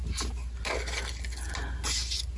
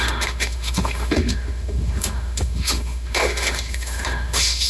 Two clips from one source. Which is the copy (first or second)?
second